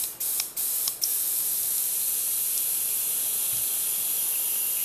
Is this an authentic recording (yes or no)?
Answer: yes